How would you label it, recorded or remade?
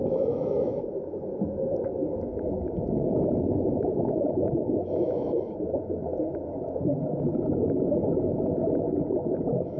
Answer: remade